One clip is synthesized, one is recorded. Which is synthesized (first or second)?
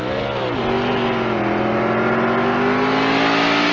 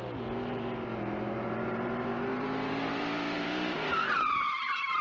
second